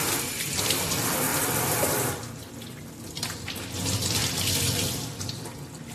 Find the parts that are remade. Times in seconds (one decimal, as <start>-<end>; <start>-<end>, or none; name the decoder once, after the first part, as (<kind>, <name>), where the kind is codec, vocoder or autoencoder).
1.3-3.4 (vocoder, BigVGAN v2)